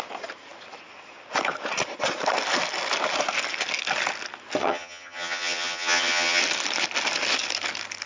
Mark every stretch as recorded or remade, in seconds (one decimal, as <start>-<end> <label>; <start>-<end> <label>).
0.0-4.6 recorded; 4.6-6.4 remade; 6.4-8.1 recorded